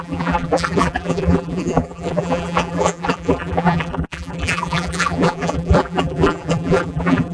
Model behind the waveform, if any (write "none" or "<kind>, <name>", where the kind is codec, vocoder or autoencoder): vocoder, BigVGAN v2